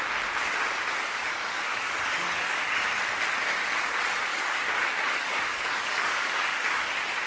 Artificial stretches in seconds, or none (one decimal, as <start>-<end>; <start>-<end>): 1.3-3.1; 4.3-6.8